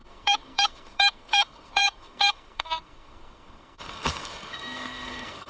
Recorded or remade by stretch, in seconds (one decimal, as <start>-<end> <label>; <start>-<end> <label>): 0.0-5.5 remade